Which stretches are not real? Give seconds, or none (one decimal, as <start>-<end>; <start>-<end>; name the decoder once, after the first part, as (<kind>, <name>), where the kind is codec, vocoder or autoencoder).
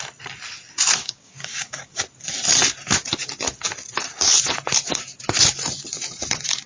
1.0-2.0 (codec, DAC)